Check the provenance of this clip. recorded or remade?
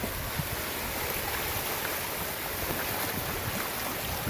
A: recorded